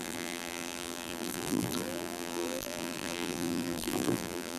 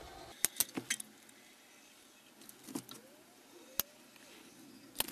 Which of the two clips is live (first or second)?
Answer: second